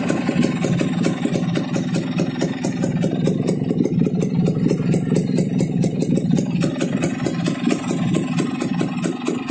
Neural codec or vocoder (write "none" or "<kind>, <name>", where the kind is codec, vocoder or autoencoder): none